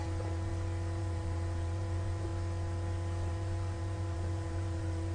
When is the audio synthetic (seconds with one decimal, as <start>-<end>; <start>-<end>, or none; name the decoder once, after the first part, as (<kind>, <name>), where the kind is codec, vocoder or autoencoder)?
0.0-0.5 (vocoder, BigVGAN v2); 1.0-2.3; 3.3-5.1